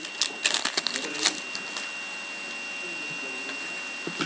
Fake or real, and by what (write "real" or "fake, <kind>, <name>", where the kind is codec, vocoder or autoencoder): real